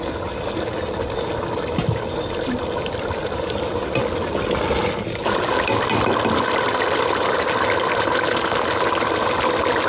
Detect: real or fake real